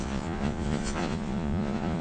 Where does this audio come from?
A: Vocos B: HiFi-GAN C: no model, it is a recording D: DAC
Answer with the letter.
A